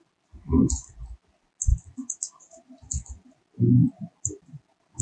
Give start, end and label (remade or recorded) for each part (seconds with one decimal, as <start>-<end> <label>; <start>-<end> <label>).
0.0-5.0 recorded